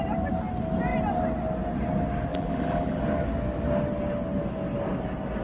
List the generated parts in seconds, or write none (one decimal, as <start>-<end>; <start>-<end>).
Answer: 2.3-3.0